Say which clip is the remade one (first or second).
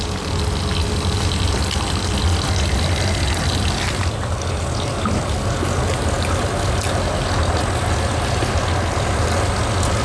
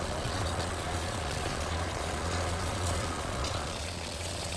second